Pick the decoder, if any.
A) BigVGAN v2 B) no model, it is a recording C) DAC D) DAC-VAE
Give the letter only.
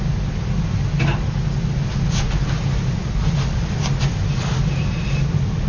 B